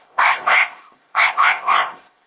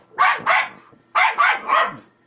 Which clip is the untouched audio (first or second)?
second